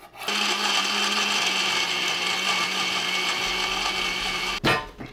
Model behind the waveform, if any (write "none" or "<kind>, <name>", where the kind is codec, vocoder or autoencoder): none